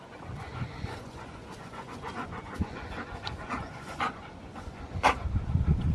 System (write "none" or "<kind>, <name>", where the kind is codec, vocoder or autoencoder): vocoder, Vocos